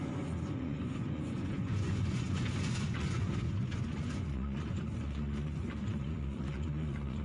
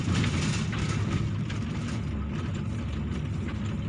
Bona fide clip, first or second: second